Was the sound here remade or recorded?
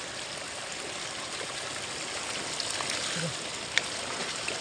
recorded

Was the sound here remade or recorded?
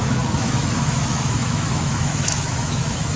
remade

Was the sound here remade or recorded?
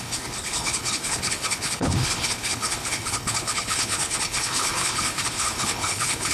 remade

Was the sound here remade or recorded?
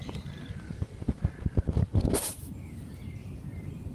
remade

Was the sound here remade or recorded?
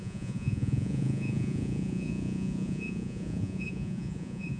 remade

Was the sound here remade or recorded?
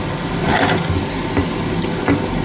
recorded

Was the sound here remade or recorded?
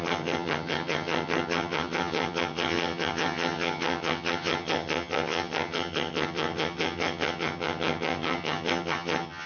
remade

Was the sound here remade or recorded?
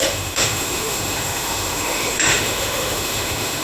remade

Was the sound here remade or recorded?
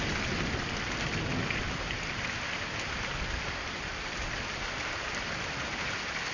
recorded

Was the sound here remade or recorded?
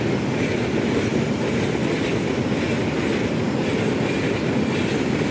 recorded